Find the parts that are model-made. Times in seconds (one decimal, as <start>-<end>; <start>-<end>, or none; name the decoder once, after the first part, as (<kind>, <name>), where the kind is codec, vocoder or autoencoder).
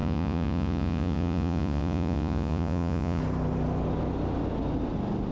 0.0-3.2 (vocoder, Vocos)